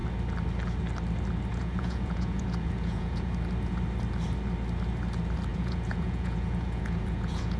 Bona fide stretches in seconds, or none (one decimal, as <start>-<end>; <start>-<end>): 0.0-1.5; 3.3-5.5